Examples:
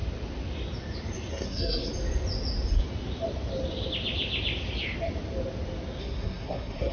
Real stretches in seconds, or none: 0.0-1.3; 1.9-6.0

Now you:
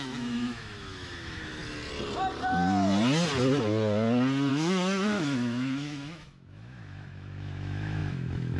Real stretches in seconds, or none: 1.6-4.5

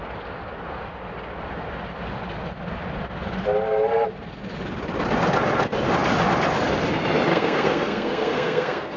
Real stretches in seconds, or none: 0.0-7.3